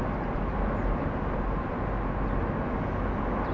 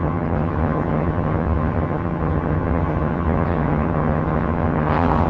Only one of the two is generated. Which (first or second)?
second